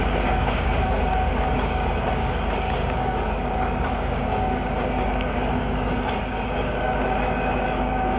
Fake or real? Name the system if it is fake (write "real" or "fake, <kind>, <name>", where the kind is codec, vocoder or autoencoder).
fake, codec, DAC